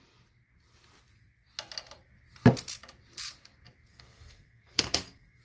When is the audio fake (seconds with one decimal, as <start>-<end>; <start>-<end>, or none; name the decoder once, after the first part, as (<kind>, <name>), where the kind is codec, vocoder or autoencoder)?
3.9-5.4 (codec, SNAC)